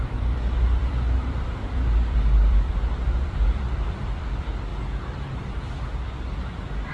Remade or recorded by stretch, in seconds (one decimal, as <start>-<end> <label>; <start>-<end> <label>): 0.0-4.7 remade; 4.7-6.4 recorded; 6.4-6.9 remade